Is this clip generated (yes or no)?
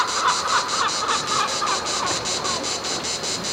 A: no